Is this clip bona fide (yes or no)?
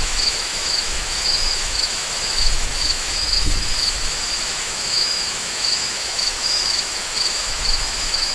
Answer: no